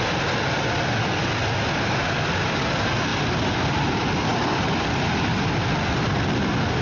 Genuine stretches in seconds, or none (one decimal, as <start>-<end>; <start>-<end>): 0.0-6.8